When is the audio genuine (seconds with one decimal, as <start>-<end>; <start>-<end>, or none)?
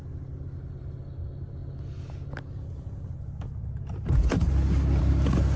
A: 0.0-5.6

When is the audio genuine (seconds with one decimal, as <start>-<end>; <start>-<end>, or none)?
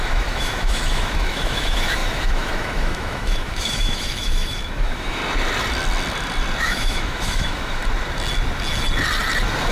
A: 5.2-6.6; 7.8-9.7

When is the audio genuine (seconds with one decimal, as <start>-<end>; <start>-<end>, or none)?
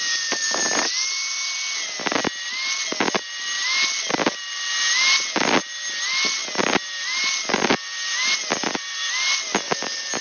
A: 0.0-10.2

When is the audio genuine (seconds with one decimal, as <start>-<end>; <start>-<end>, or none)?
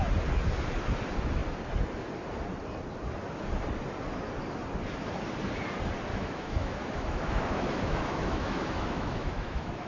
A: 0.0-6.1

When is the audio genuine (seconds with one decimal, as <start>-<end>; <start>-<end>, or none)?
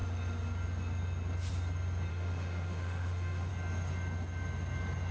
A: 0.0-2.1; 3.5-5.1